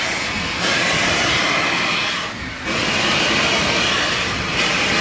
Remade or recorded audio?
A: recorded